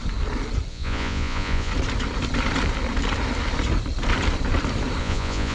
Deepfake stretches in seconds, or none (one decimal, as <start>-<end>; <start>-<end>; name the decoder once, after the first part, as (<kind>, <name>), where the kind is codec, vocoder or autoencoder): 0.7-1.7 (vocoder, Vocos); 5.0-5.5